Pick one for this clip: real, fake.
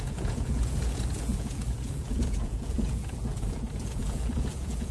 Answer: fake